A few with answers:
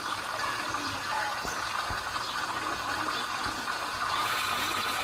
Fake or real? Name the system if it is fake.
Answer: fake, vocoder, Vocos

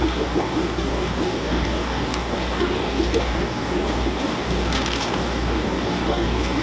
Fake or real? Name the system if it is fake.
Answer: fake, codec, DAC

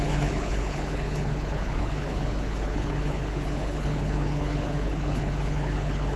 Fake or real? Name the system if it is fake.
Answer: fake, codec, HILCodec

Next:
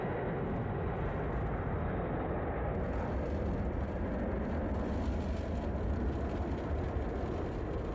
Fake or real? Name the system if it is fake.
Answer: real